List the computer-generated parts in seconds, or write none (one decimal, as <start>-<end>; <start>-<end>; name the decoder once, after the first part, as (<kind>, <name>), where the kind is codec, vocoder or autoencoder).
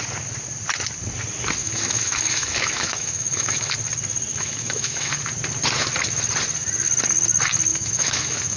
1.6-3.7 (autoencoder, DAC-VAE); 4.3-5.1; 7.7-8.6